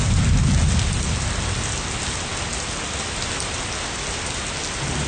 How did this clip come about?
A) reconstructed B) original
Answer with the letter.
B